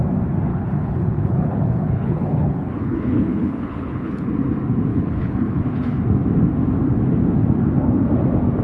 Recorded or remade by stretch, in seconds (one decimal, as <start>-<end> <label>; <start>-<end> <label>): 0.0-0.5 recorded; 0.5-4.3 remade; 4.3-4.9 recorded; 4.9-6.0 remade; 6.0-8.6 recorded